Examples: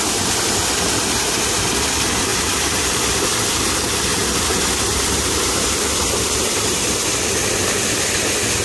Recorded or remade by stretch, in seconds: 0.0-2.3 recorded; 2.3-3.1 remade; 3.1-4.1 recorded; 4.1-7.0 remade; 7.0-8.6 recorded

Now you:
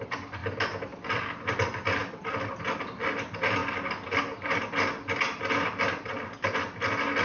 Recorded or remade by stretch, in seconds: 0.0-7.2 recorded

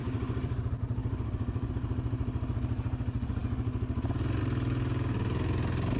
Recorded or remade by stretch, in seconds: 0.0-1.7 remade; 1.7-6.0 recorded